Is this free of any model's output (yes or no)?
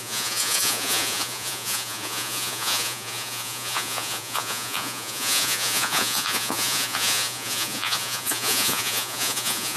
no